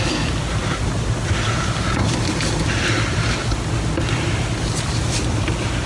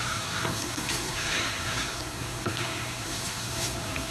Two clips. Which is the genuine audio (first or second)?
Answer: first